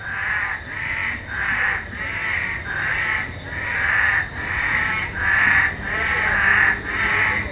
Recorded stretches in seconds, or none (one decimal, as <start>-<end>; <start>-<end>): 0.0-7.5